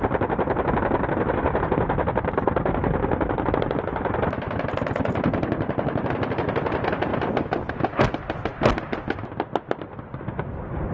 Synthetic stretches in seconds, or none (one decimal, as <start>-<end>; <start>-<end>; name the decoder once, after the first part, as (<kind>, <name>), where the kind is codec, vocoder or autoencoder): none